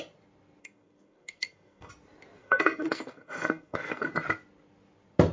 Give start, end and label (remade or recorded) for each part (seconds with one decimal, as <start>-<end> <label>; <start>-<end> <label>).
0.0-0.6 recorded; 0.6-1.9 remade; 1.9-2.4 recorded; 2.4-4.1 remade; 4.1-5.3 recorded